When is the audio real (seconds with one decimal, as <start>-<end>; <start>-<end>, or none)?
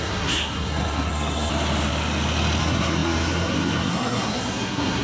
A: 1.5-2.6